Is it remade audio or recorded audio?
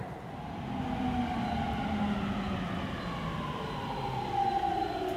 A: recorded